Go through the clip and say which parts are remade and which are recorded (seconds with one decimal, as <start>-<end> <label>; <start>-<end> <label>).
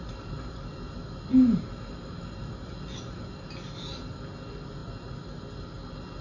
0.0-6.2 recorded